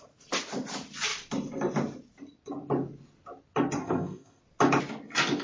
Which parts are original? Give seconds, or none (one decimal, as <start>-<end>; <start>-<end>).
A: 0.0-3.8; 4.4-5.4